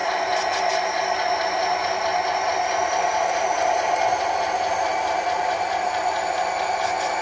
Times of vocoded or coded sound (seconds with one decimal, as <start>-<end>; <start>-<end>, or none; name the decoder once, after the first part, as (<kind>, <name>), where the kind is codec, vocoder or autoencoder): none